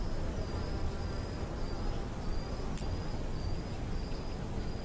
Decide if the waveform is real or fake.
real